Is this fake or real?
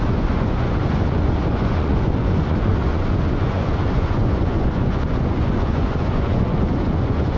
fake